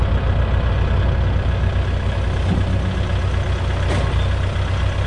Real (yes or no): yes